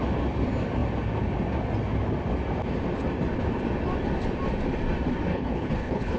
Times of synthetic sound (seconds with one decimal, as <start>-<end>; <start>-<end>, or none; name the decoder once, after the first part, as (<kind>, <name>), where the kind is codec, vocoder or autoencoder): 5.3-6.2 (codec, HILCodec)